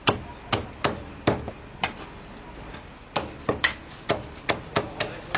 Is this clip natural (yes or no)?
yes